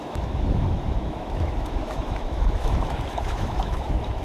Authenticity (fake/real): fake